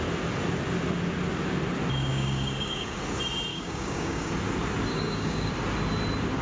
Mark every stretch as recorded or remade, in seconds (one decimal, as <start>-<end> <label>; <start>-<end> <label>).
0.0-2.1 recorded; 2.1-3.0 remade; 3.0-3.5 recorded; 3.5-4.3 remade; 4.3-4.9 recorded; 4.9-5.5 remade; 5.5-6.4 recorded